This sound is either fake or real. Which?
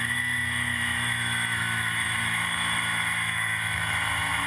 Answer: fake